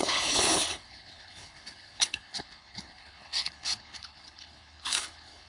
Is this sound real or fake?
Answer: fake